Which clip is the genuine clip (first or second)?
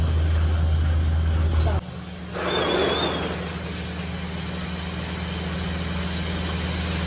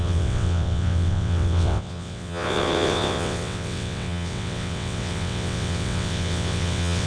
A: first